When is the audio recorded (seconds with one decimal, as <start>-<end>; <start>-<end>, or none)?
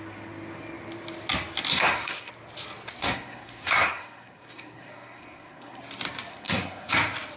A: 0.0-1.7; 2.3-3.0; 5.8-6.3; 6.9-7.4